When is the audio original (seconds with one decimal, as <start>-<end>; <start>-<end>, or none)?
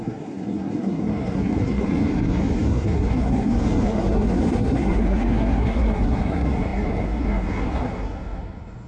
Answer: none